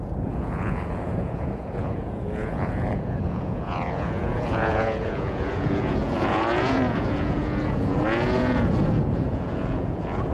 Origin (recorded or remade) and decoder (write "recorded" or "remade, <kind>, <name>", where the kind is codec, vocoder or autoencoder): remade, vocoder, Vocos